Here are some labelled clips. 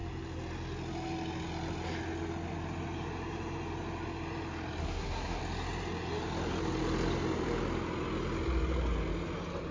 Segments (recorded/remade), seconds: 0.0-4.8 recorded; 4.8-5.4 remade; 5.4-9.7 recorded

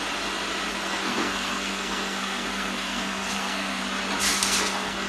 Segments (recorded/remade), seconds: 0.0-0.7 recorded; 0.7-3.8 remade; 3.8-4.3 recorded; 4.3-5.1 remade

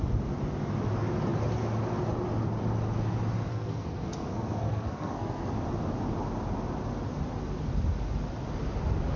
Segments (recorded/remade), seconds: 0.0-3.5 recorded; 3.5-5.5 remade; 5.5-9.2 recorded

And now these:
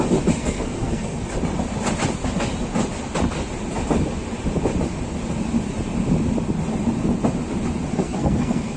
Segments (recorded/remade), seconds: 0.0-0.4 recorded; 0.4-1.2 remade; 1.2-7.9 recorded; 7.9-8.8 remade

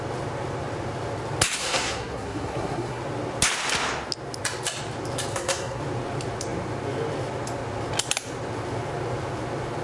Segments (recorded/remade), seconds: 0.0-1.6 recorded; 1.6-3.0 remade; 3.0-5.3 recorded; 5.3-5.8 remade; 5.8-9.8 recorded

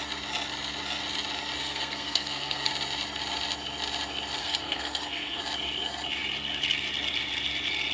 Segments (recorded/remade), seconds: 0.0-1.6 recorded; 1.6-2.7 remade; 2.7-4.4 recorded; 4.4-5.4 remade; 5.4-7.9 recorded

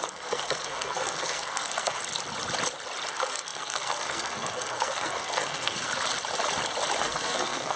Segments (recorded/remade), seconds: 0.0-2.0 remade; 2.0-3.1 recorded; 3.1-5.9 remade; 5.9-7.0 recorded; 7.0-7.8 remade